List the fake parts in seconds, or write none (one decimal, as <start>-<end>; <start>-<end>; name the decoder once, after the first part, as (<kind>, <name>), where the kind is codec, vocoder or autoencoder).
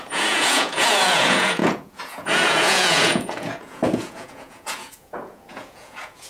0.0-6.3 (vocoder, Vocos)